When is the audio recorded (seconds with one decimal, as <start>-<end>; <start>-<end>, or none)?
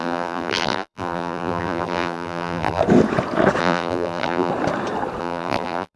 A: 2.8-3.6; 4.5-5.2